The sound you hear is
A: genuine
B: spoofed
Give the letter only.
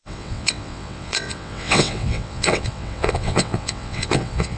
B